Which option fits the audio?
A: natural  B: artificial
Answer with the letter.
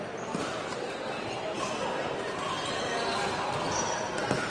A